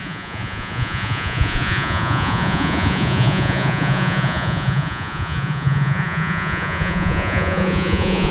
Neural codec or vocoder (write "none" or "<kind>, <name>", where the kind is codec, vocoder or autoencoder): vocoder, Vocos